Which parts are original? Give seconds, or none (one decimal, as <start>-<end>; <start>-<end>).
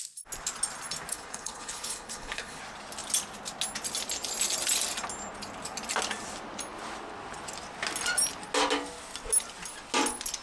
0.0-1.1; 2.6-10.4